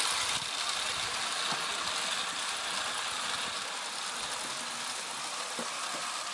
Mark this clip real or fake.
real